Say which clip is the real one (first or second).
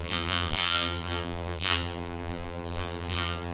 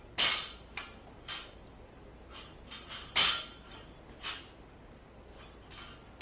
second